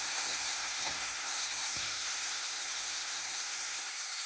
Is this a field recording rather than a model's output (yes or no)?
no